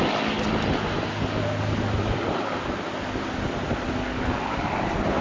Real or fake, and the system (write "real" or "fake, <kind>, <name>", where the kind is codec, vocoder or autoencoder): real